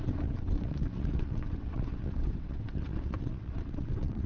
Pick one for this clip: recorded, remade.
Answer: remade